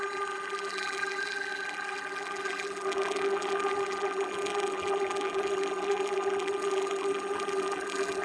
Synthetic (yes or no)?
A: yes